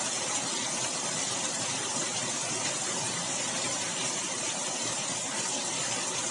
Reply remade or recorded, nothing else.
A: recorded